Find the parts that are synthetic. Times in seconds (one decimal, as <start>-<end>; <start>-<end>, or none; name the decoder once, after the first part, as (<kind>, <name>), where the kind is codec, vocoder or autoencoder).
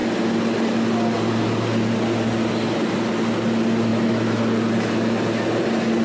3.9-4.4 (autoencoder, DAC-VAE)